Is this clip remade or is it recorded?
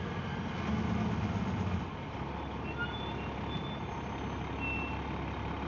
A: recorded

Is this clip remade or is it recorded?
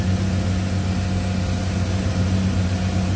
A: recorded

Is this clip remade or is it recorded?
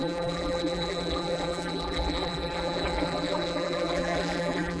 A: remade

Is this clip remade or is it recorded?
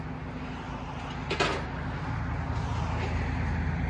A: recorded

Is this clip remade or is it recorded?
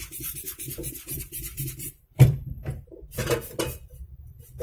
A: remade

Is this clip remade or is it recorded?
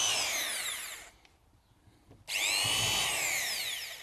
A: recorded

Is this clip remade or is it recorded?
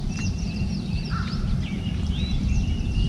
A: remade